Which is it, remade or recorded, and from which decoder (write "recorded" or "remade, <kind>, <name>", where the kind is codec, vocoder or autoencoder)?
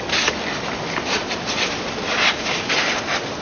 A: recorded